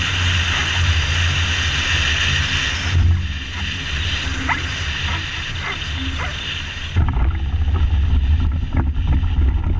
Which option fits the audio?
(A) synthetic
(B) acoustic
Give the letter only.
B